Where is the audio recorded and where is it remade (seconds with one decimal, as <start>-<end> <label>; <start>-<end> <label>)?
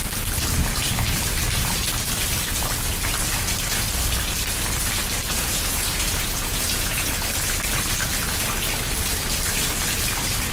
0.0-5.3 recorded; 5.3-7.1 remade; 7.1-10.5 recorded